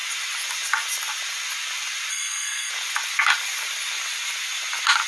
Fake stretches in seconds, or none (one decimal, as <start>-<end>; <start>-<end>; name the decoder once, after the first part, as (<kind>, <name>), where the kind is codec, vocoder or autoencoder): 2.1-2.7 (codec, SNAC)